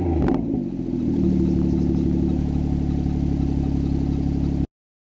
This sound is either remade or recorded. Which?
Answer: recorded